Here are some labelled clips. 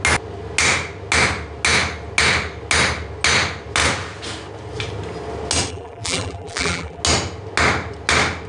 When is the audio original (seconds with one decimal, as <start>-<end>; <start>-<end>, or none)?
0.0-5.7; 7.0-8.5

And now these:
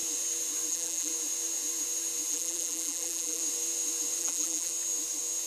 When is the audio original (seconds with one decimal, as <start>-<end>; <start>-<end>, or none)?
0.0-0.7; 1.1-2.3; 3.4-4.2; 4.7-5.5

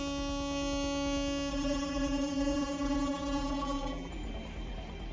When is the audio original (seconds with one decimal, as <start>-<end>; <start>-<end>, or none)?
0.0-1.5; 4.1-5.1